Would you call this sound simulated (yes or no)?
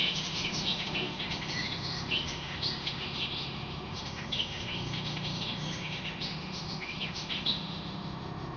yes